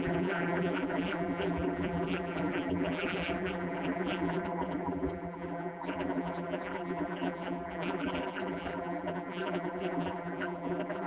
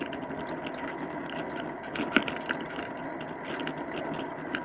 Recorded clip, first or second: second